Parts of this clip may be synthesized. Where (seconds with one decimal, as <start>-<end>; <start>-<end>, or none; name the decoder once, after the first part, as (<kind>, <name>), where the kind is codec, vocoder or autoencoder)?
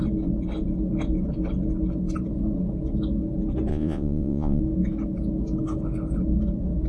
3.7-4.6 (vocoder, Vocos)